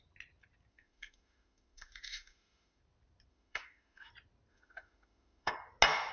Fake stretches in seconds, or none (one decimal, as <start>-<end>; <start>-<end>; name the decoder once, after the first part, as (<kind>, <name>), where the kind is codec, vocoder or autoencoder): 0.7-2.8 (autoencoder, DAC-VAE); 3.3-4.1; 4.5-5.5